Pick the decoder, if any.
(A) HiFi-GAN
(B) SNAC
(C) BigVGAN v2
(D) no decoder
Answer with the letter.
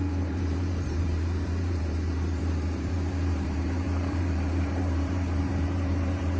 C